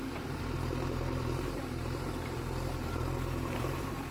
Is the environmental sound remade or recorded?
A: remade